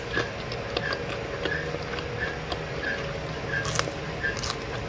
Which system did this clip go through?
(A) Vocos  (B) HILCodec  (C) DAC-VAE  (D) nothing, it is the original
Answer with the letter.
D